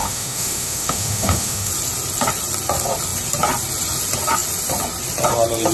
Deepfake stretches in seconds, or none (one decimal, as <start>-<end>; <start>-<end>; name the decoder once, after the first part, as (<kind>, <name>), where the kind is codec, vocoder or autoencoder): 0.0-1.7 (autoencoder, DAC-VAE)